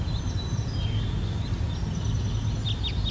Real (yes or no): yes